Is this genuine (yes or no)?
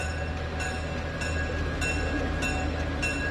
yes